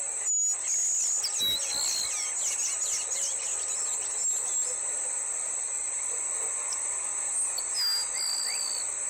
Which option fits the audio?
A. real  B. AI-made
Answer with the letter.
A